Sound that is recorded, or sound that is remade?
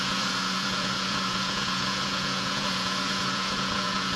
remade